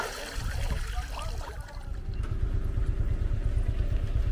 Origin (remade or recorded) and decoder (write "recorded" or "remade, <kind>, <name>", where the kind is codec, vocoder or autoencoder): recorded